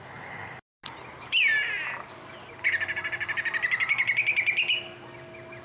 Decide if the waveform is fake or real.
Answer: real